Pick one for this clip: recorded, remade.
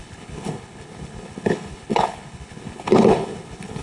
remade